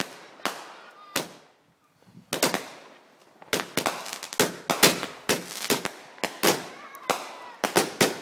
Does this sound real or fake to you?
real